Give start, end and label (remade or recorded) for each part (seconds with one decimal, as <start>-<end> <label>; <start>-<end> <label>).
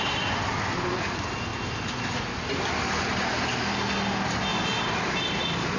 0.0-5.8 recorded